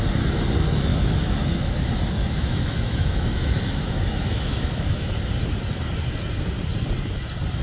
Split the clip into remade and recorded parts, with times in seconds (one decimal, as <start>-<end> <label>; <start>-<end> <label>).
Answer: 0.0-0.9 recorded; 0.9-1.7 remade; 1.7-2.2 recorded; 2.2-5.1 remade; 5.1-7.6 recorded

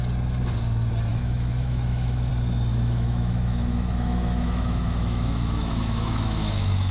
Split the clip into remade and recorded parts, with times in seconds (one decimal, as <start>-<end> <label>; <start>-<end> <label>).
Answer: 0.0-1.1 recorded; 1.1-2.3 remade; 2.3-2.7 recorded; 2.7-6.9 remade

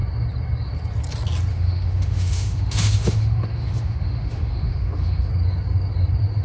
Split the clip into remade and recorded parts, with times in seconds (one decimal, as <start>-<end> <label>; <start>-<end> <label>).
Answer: 0.0-1.5 recorded; 1.5-5.3 remade; 5.3-6.4 recorded

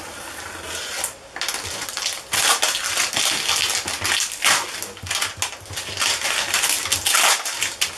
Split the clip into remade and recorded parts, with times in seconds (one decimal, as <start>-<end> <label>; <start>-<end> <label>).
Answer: 0.0-8.0 recorded

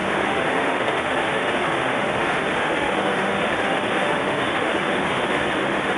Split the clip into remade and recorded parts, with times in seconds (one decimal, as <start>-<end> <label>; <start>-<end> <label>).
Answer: 0.0-6.0 remade

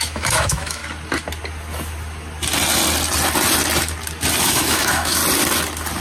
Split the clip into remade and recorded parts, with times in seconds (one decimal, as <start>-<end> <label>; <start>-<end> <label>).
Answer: 0.0-0.8 remade; 0.8-4.4 recorded; 4.4-5.2 remade; 5.2-6.0 recorded

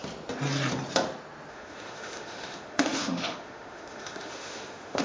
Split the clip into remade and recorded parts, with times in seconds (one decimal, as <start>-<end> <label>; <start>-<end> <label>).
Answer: 0.0-1.5 recorded; 1.5-5.0 remade

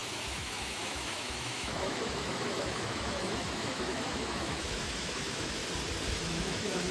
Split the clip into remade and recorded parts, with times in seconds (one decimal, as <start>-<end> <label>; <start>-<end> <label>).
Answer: 0.0-5.6 remade; 5.6-6.2 recorded; 6.2-6.9 remade